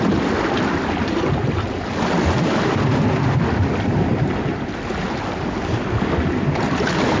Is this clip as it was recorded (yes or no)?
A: yes